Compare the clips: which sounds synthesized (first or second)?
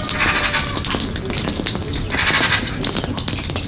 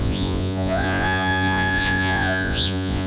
second